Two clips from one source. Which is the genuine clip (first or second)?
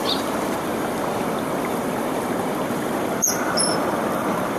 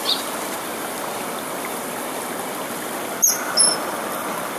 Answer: second